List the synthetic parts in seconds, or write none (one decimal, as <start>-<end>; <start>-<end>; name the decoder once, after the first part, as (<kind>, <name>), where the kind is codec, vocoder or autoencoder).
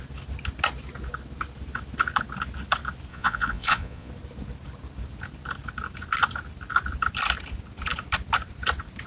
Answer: 3.1-4.1 (vocoder, Vocos)